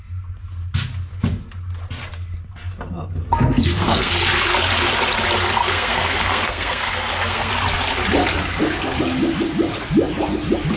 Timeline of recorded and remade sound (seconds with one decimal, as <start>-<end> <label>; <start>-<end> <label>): 0.0-3.2 recorded; 3.2-4.2 remade; 4.2-5.6 recorded; 5.6-7.5 remade; 7.5-10.8 recorded